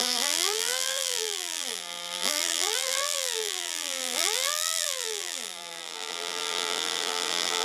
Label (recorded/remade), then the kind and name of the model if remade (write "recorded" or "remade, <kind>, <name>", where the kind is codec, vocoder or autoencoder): remade, vocoder, BigVGAN v2